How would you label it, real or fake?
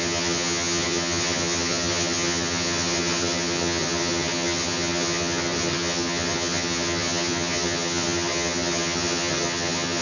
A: fake